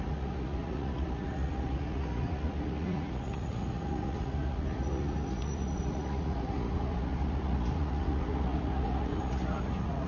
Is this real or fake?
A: fake